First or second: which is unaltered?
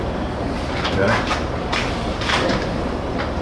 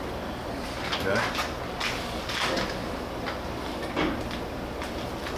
second